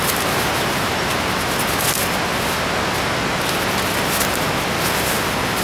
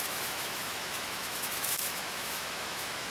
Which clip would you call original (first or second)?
first